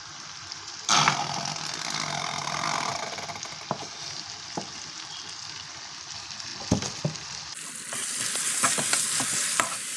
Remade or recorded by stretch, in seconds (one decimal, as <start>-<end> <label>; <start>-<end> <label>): 0.0-2.9 remade; 2.9-4.2 recorded; 4.2-6.5 remade; 6.5-7.0 recorded; 7.0-10.0 remade